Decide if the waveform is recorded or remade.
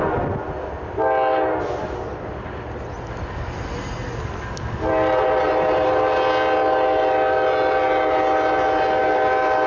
recorded